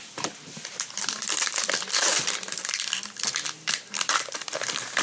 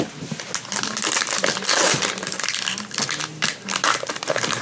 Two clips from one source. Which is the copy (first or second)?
first